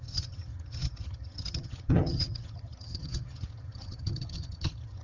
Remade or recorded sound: remade